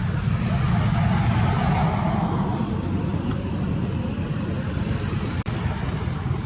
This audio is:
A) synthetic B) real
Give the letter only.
A